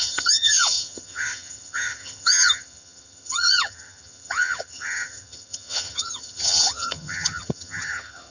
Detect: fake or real fake